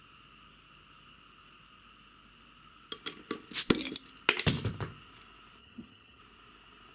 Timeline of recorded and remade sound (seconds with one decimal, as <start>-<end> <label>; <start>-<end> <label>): 0.0-5.6 recorded; 5.6-6.2 remade; 6.2-6.9 recorded

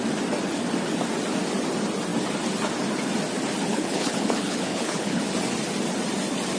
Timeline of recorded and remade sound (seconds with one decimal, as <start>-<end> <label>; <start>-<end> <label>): 0.0-3.7 recorded; 3.7-5.2 remade; 5.2-6.6 recorded

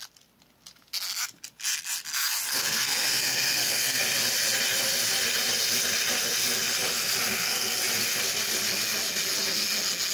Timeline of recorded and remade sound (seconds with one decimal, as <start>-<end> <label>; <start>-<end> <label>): 0.0-2.5 recorded; 2.5-4.0 remade; 4.0-7.3 recorded; 7.3-7.8 remade; 7.8-10.1 recorded

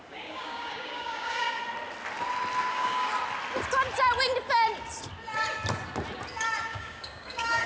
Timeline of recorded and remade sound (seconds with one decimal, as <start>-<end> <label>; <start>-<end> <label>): 0.0-1.6 remade; 1.6-2.7 recorded; 2.7-3.1 remade; 3.1-6.7 recorded; 6.7-7.7 remade

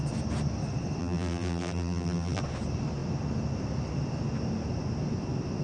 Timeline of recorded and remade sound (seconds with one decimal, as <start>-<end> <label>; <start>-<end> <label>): 0.0-1.0 recorded; 1.0-2.4 remade; 2.4-5.6 recorded

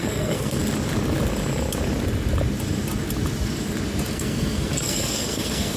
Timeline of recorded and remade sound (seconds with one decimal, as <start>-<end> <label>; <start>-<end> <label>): 0.0-0.6 remade; 0.6-4.1 recorded; 4.1-5.8 remade

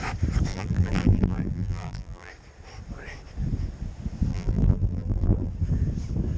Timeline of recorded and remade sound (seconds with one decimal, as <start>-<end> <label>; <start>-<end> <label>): 0.0-0.5 recorded; 0.5-2.3 remade; 2.3-4.3 recorded; 4.3-5.5 remade; 5.5-6.4 recorded

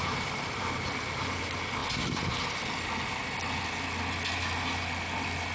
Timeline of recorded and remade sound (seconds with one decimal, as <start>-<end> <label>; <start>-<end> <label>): 0.0-1.4 remade; 1.4-5.5 recorded